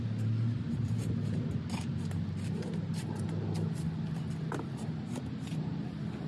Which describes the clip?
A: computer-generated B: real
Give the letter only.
B